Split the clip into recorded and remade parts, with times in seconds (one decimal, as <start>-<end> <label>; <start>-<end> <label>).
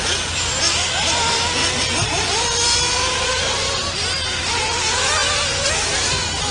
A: 0.0-1.6 recorded; 1.6-3.9 remade; 3.9-6.5 recorded